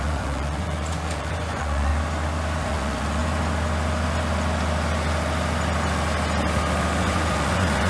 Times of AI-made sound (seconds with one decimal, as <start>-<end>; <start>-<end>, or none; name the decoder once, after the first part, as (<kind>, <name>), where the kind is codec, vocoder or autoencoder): 0.0-1.9 (vocoder, Vocos); 2.6-3.2; 7.0-7.9